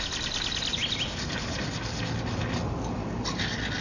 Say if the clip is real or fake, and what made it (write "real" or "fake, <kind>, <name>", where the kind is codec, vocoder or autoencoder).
real